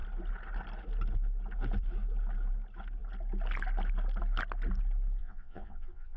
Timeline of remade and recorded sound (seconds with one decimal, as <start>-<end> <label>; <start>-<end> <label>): 0.0-5.2 recorded; 5.2-6.2 remade